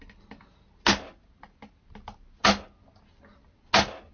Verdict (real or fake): real